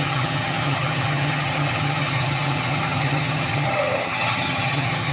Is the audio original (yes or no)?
no